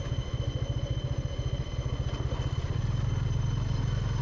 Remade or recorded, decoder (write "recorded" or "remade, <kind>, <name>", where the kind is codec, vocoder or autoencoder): recorded